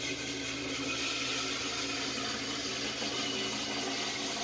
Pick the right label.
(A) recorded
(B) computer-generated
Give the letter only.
A